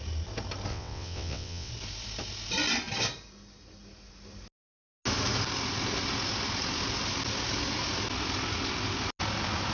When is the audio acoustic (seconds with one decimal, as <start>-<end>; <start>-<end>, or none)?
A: 0.0-0.7; 1.7-9.7